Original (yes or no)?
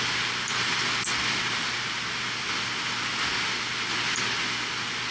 yes